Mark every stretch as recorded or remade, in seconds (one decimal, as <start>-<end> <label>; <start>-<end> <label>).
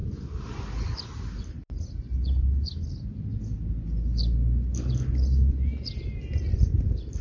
0.0-7.2 recorded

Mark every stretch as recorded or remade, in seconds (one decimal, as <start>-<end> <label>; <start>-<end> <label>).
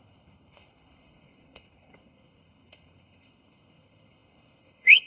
0.0-5.1 remade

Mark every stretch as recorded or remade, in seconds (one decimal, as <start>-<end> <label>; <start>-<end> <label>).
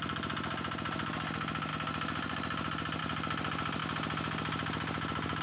0.0-5.4 recorded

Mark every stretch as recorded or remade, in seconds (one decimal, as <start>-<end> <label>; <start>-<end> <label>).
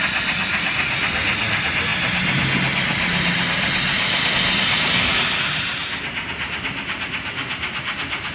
0.0-8.3 recorded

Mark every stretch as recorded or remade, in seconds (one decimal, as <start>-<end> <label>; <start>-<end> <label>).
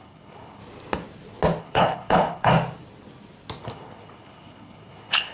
0.0-0.6 remade; 0.6-1.6 recorded; 1.6-2.5 remade; 2.5-3.6 recorded; 3.6-5.3 remade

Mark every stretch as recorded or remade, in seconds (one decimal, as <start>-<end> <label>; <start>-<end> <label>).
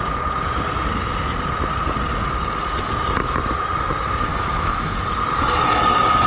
0.0-4.3 recorded; 4.3-4.9 remade; 4.9-6.3 recorded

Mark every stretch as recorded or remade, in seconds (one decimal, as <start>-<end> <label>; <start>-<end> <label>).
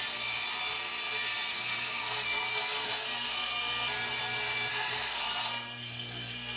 0.0-1.5 recorded; 1.5-3.6 remade; 3.6-4.7 recorded; 4.7-6.6 remade